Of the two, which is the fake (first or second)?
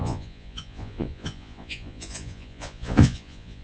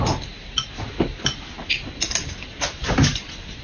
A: first